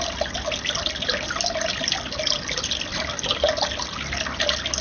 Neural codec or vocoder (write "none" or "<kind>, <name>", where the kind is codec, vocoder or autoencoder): none